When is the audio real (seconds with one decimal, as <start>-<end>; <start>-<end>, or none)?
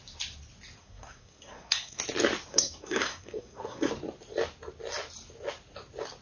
0.0-0.8; 2.0-2.5; 3.9-6.2